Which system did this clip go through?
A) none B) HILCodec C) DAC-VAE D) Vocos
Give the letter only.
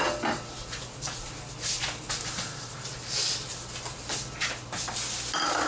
A